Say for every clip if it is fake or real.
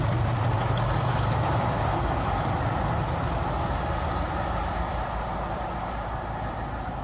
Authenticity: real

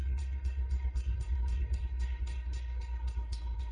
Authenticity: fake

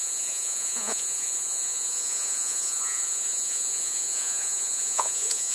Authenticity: fake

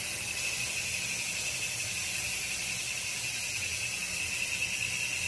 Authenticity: real